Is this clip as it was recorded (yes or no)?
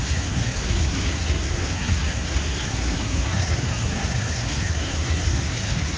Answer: no